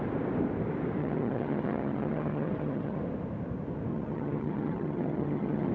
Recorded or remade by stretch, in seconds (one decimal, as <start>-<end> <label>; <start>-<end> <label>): 0.0-1.0 recorded; 1.0-3.0 remade; 3.0-3.9 recorded; 3.9-5.7 remade